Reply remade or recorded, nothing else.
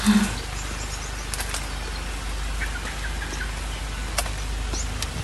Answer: recorded